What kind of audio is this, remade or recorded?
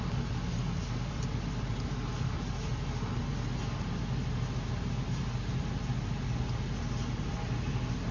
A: recorded